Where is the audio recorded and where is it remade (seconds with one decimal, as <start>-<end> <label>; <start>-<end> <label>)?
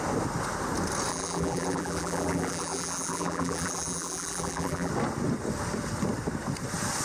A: 0.0-1.1 recorded; 1.1-4.9 remade; 4.9-7.0 recorded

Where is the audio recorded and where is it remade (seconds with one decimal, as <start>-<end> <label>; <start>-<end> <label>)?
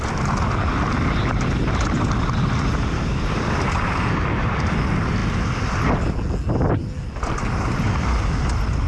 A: 0.0-8.9 recorded